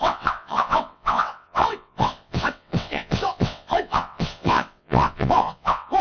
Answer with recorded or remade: remade